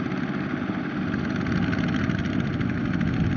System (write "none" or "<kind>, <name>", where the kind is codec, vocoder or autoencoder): none